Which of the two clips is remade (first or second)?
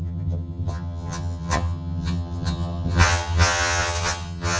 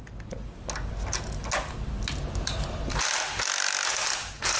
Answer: first